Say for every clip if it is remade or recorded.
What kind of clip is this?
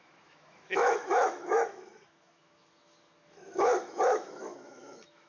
remade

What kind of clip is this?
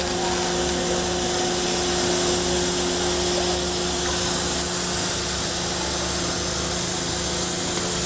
recorded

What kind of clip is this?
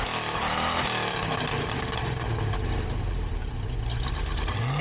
recorded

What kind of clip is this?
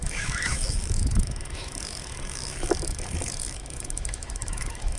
remade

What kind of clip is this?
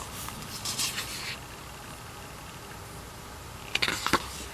recorded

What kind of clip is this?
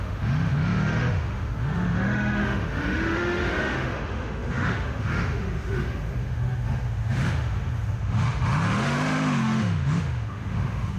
remade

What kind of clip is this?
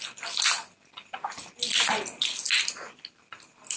recorded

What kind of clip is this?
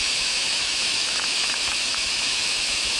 remade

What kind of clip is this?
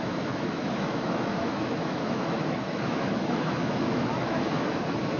remade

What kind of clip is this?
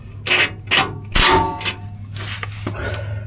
recorded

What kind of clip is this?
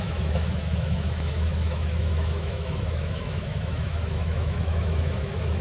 remade